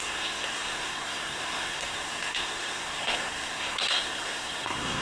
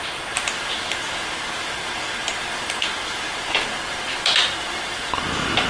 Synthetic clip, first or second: first